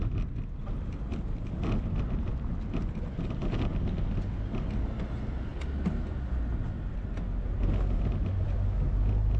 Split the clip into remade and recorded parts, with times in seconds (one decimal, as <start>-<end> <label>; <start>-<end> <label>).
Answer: 0.0-9.4 recorded